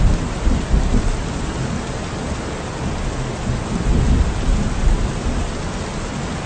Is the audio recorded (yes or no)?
yes